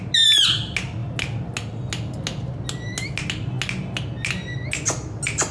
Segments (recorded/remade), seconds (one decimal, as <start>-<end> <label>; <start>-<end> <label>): 0.0-5.5 recorded